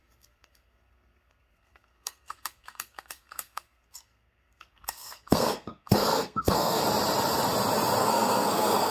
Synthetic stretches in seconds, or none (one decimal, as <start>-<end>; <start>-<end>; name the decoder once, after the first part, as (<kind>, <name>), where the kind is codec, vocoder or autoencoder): 0.0-6.8 (codec, SNAC); 8.0-8.9